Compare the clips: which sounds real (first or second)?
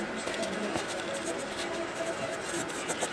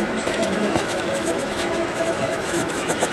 first